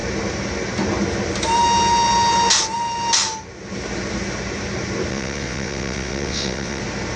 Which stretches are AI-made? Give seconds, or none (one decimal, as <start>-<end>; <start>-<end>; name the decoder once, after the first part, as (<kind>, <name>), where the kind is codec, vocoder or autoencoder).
5.1-6.8 (vocoder, WaveNeXt)